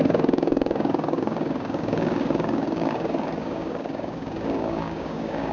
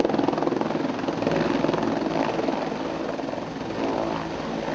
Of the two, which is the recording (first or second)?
second